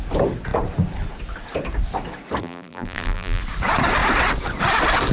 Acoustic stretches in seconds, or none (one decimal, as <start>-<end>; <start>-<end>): 0.0-2.4; 3.4-5.1